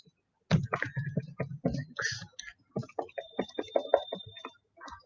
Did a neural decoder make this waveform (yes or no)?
no